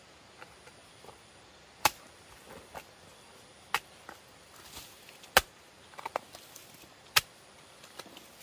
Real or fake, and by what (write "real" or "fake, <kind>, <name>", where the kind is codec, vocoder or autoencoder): real